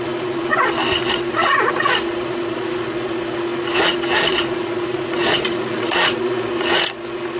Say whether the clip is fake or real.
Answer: fake